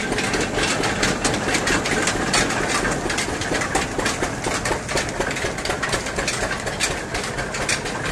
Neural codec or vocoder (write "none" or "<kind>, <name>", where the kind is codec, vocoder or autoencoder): none